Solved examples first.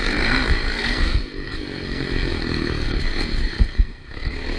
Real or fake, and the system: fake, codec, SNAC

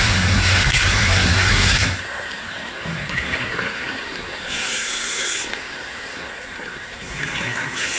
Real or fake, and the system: fake, codec, SNAC